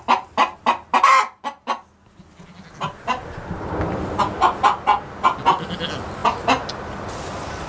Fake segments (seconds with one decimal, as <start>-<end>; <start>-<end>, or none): none